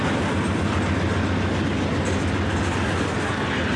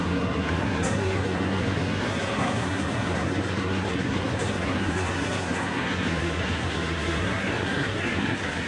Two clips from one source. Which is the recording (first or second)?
first